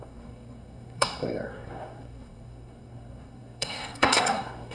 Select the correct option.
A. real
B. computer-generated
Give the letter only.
B